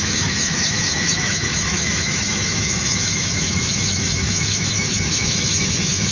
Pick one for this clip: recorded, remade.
remade